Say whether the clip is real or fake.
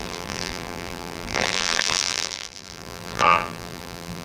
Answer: fake